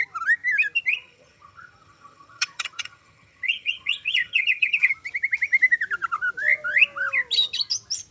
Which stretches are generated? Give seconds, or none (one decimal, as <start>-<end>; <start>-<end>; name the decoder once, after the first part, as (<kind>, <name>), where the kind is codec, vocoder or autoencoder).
0.9-4.9 (vocoder, HiFi-GAN)